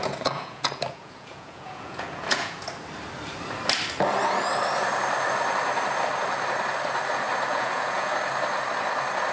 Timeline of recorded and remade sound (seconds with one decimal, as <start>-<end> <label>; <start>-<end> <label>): 0.0-2.6 remade; 2.6-7.5 recorded; 7.5-8.1 remade; 8.1-9.3 recorded